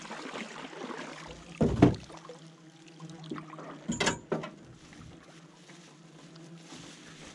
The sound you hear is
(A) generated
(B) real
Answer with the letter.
B